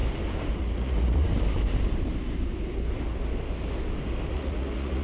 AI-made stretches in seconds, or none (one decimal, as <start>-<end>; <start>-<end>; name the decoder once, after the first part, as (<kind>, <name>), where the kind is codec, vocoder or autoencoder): 0.6-1.3 (vocoder, Vocos); 4.3-5.0